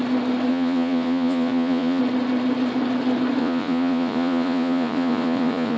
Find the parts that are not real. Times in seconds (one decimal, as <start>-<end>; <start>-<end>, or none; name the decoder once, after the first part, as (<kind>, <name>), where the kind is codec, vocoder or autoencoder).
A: 0.5-2.0 (vocoder, Vocos); 3.4-5.8